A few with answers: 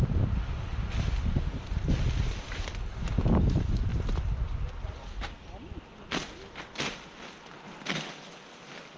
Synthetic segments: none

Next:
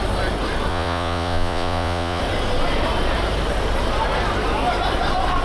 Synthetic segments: 0.7-2.2 (vocoder, Vocos)

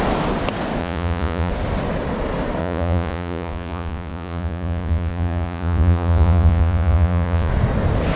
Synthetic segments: 0.8-1.5 (vocoder, Vocos); 2.6-7.5

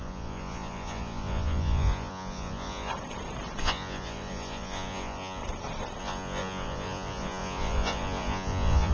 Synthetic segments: 0.0-2.9 (vocoder, Vocos); 3.6-5.4; 6.0-8.9

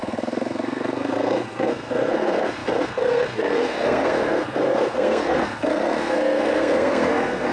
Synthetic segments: 0.0-7.5 (codec, SNAC)

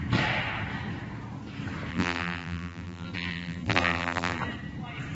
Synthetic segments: 1.9-4.4 (vocoder, BigVGAN v2)